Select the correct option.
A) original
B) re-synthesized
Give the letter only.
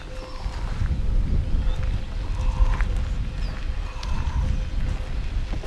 A